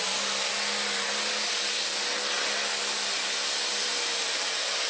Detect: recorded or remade recorded